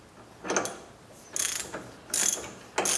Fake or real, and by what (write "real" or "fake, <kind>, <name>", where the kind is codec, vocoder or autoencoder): real